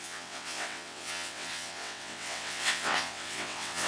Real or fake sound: fake